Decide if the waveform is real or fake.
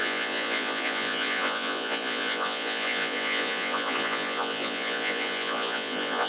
fake